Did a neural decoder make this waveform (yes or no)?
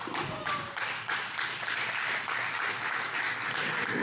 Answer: yes